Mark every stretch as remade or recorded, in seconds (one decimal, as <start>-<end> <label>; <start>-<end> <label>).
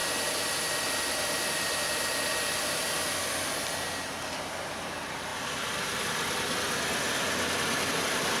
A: 0.0-8.4 recorded